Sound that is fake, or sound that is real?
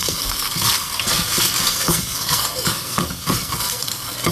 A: fake